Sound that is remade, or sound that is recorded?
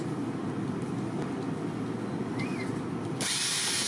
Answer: recorded